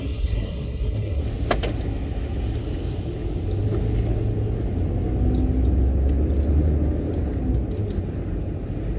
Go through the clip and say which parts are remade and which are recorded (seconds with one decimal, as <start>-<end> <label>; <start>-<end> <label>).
0.0-1.2 remade; 1.2-9.0 recorded